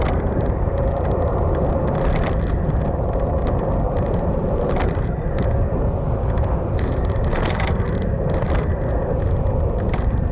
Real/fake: fake